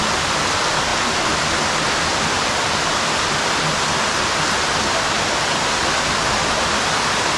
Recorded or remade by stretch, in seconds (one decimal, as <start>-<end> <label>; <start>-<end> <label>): 0.0-7.4 recorded